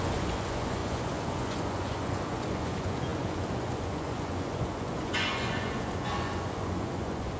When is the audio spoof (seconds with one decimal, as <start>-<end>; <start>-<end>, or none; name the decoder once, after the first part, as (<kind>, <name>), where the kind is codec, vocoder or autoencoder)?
0.0-7.4 (vocoder, Vocos)